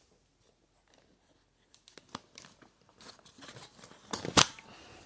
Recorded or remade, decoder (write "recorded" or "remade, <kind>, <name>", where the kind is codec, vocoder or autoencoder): recorded